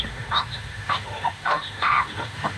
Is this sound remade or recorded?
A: remade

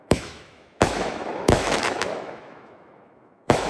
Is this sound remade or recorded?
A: remade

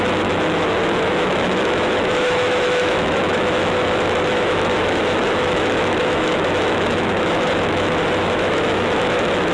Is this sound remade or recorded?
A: remade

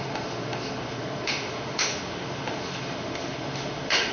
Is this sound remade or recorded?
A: remade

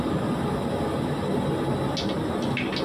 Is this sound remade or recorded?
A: recorded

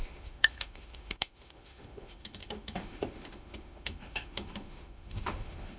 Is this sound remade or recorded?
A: remade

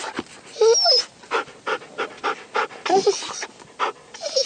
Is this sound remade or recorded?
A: recorded